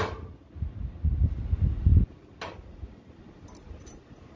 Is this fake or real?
real